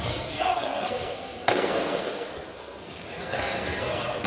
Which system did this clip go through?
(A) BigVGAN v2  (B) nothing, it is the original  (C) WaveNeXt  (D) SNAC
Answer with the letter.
D